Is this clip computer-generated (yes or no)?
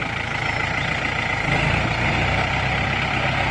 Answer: no